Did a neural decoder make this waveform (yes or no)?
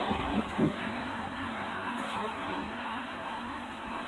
yes